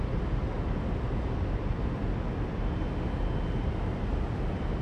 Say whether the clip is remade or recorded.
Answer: recorded